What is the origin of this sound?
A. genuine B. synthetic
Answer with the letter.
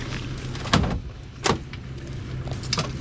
A